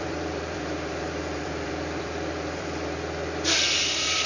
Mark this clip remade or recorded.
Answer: remade